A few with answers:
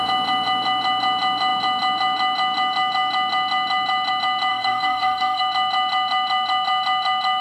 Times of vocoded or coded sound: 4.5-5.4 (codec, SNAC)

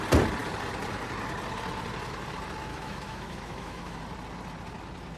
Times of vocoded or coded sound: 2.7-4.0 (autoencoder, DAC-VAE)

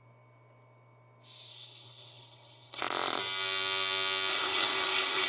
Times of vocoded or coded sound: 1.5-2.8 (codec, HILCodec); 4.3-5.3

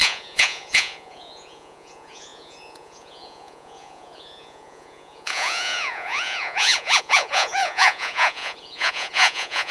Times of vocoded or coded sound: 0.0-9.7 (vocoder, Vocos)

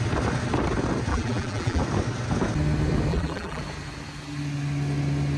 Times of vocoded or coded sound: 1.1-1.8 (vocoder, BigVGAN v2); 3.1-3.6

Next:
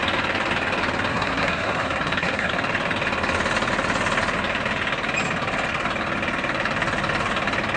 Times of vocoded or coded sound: 1.1-2.5 (codec, SNAC)

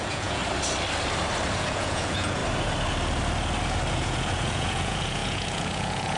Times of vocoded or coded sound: 0.0-0.4 (vocoder, Vocos); 1.5-2.4; 3.9-6.2